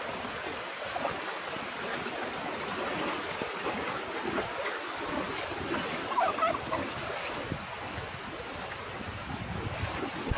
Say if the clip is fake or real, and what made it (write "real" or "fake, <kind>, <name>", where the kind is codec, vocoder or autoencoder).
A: real